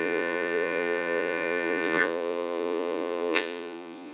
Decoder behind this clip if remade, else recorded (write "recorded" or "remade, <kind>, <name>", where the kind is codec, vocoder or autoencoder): remade, vocoder, Vocos